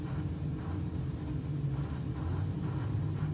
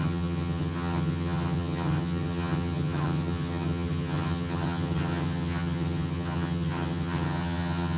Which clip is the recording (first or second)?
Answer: first